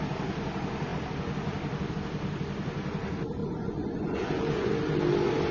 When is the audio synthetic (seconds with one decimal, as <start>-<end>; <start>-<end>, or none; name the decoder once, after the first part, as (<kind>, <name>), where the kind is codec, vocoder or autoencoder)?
3.4-4.7 (vocoder, Vocos)